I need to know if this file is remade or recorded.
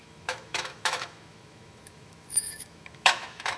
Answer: remade